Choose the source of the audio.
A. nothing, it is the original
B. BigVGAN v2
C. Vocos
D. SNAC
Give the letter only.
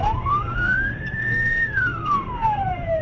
D